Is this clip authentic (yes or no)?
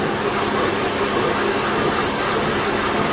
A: yes